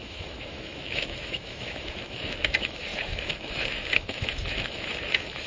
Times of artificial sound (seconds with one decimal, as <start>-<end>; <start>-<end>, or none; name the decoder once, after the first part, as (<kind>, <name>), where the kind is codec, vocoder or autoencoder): 0.0-5.5 (autoencoder, DAC-VAE)